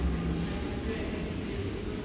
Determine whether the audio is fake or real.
real